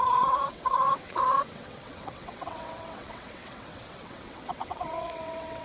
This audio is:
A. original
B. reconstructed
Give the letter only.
B